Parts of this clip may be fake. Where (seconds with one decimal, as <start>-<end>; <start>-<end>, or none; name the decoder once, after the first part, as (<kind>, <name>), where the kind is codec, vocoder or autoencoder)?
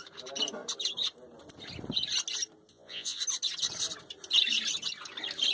2.7-3.2 (vocoder, Vocos)